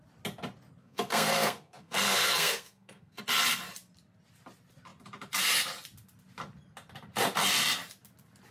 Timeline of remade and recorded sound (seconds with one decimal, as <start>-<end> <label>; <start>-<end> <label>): 0.0-0.8 recorded; 0.8-3.2 remade; 3.2-8.5 recorded